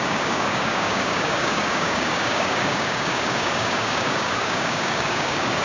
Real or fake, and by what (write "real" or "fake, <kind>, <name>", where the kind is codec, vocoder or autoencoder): fake, codec, DAC